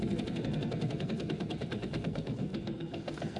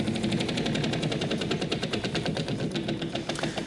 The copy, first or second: first